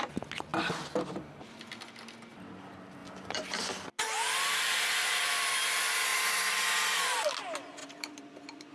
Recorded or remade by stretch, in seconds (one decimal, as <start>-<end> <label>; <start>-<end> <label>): 0.0-0.5 recorded; 0.5-1.5 remade; 1.5-3.0 recorded; 3.0-4.0 remade; 4.0-6.1 recorded; 6.1-7.2 remade; 7.2-7.8 recorded; 7.8-8.7 remade